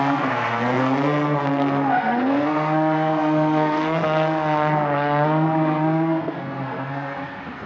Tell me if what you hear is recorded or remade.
remade